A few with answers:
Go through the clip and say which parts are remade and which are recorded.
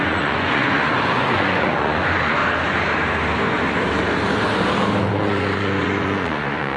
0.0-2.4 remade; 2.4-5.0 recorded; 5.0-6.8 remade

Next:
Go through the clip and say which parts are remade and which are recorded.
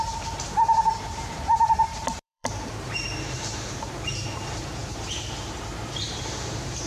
0.0-6.9 remade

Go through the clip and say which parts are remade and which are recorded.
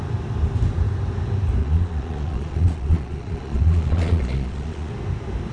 0.0-1.6 recorded; 1.6-4.9 remade; 4.9-5.5 recorded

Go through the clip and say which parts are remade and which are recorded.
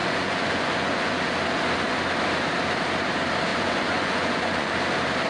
0.0-1.2 remade; 1.2-3.5 recorded; 3.5-4.7 remade; 4.7-5.3 recorded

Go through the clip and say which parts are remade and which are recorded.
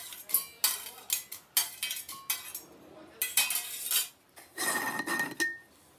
0.0-6.0 recorded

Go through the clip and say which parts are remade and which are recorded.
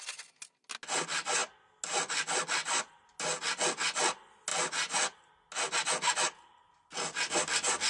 0.0-7.9 recorded